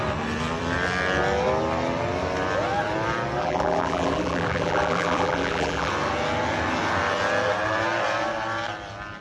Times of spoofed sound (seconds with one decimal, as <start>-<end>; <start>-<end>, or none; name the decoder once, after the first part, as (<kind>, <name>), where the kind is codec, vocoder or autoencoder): 3.4-5.9 (vocoder, BigVGAN v2)